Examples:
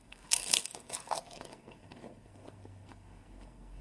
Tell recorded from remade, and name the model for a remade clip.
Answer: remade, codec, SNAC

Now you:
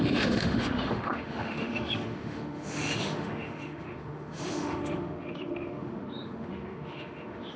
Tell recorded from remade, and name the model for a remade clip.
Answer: remade, autoencoder, DAC-VAE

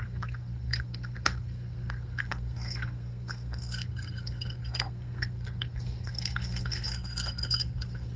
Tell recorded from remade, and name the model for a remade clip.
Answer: remade, codec, SNAC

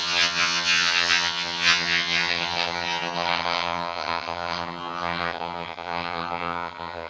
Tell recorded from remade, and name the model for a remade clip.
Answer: remade, vocoder, HiFi-GAN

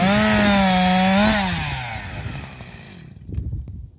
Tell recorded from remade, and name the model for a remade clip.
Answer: recorded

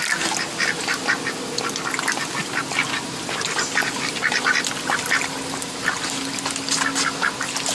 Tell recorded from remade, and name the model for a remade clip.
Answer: recorded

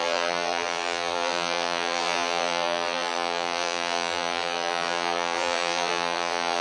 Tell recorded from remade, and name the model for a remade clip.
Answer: remade, vocoder, BigVGAN v2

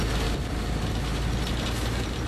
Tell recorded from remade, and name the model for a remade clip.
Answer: recorded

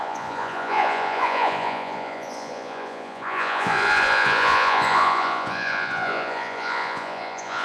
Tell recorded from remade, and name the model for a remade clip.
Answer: remade, vocoder, Vocos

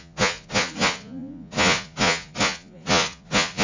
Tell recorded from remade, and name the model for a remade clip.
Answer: remade, vocoder, Vocos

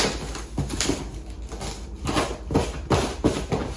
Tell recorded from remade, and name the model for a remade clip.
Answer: recorded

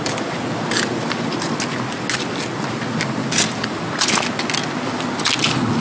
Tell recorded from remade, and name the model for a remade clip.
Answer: recorded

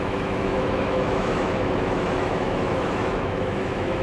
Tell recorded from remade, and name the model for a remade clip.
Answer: remade, autoencoder, DAC-VAE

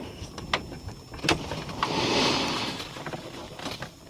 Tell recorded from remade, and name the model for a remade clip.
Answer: recorded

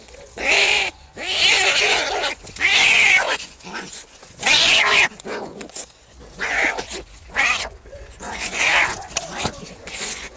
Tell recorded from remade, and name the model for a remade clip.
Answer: remade, vocoder, Vocos